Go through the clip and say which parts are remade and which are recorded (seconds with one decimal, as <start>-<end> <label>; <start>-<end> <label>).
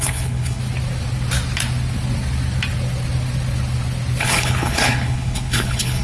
0.0-0.6 remade; 0.6-4.2 recorded; 4.2-6.0 remade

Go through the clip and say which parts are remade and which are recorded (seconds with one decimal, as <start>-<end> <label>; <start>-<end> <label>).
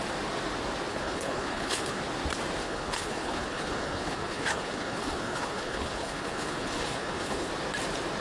0.0-0.9 recorded; 0.9-2.0 remade; 2.0-2.6 recorded; 2.6-7.5 remade; 7.5-8.2 recorded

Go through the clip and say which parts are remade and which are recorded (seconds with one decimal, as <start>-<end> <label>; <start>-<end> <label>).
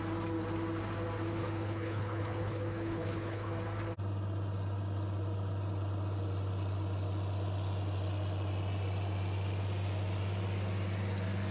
0.0-1.4 recorded; 1.4-3.5 remade; 3.5-11.5 recorded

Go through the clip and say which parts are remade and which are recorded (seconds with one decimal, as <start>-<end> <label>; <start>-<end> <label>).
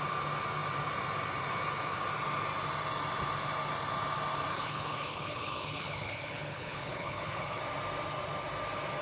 0.0-4.5 recorded; 4.5-7.6 remade; 7.6-9.0 recorded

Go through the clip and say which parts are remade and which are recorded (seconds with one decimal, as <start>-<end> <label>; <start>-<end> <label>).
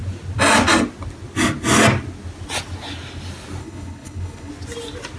0.0-3.6 recorded; 3.6-4.5 remade; 4.5-5.2 recorded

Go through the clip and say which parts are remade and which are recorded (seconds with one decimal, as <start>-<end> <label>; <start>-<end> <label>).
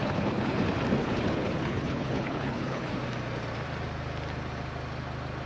0.0-0.6 remade; 0.6-1.0 recorded; 1.0-2.9 remade; 2.9-5.5 recorded